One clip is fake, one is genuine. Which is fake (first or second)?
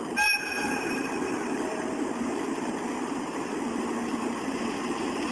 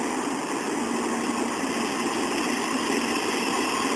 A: first